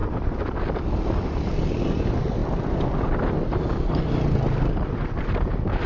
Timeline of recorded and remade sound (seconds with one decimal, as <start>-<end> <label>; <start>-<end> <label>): 0.0-5.9 recorded